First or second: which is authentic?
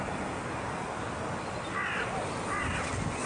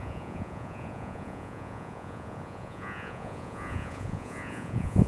first